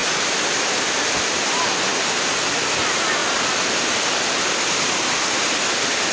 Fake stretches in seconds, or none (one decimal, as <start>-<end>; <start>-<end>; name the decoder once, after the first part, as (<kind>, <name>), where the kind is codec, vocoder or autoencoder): none